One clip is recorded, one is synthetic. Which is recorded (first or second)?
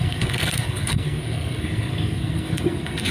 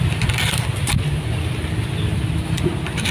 second